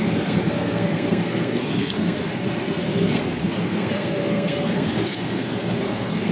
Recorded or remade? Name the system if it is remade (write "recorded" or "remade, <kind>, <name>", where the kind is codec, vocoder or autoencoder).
remade, codec, SNAC